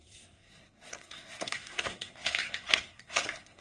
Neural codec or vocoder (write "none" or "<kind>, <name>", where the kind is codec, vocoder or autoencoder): codec, SNAC